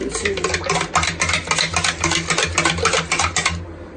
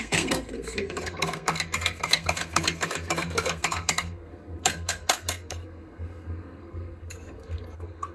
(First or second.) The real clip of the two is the first